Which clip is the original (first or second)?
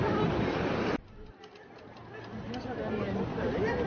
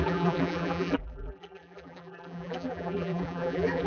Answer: first